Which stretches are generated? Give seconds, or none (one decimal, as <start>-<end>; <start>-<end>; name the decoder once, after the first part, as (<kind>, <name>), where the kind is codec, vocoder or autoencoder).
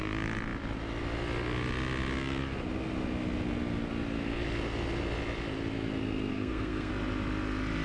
6.3-6.9 (codec, SNAC)